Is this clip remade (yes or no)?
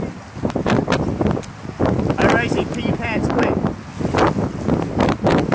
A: no